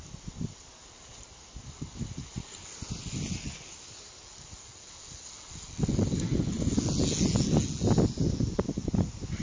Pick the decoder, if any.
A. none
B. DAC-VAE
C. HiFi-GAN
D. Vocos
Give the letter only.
A